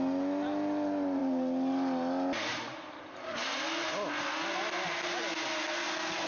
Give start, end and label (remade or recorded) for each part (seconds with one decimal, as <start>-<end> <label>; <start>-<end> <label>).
0.0-6.3 recorded